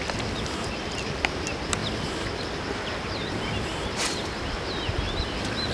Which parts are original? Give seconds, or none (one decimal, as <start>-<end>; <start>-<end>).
0.0-5.7